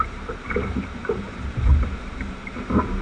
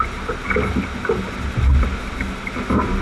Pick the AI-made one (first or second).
first